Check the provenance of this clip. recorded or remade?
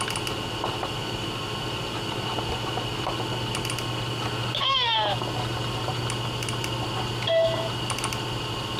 recorded